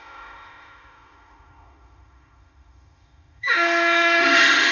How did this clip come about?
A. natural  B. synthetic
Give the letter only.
B